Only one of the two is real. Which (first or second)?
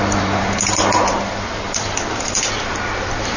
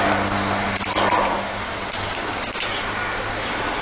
second